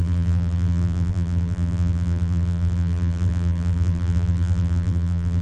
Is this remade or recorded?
remade